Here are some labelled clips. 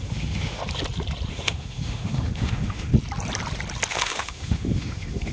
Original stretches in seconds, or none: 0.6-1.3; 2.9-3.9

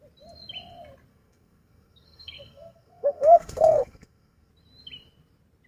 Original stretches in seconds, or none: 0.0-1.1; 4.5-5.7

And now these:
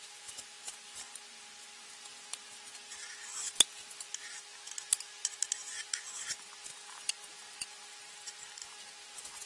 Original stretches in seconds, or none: 0.0-9.5